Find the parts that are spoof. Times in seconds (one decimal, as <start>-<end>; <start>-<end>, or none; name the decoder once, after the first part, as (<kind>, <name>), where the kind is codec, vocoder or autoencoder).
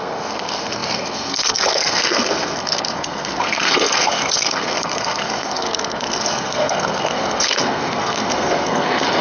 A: 0.0-9.2 (codec, SNAC)